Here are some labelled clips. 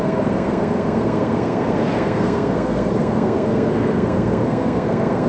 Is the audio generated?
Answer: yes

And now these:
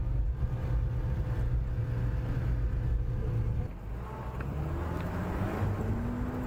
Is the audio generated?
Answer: no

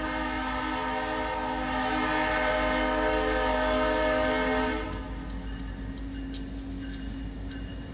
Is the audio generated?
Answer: no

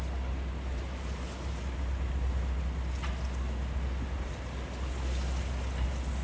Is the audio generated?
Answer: no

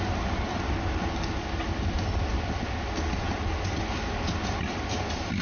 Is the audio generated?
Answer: no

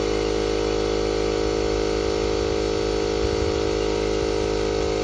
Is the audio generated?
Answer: no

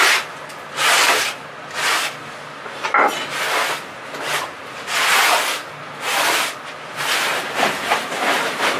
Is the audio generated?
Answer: no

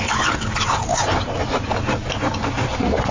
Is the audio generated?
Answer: no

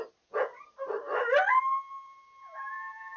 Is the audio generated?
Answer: no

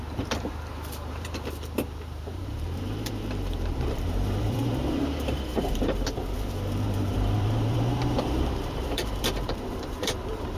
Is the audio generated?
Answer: yes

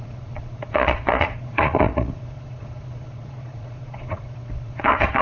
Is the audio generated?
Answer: yes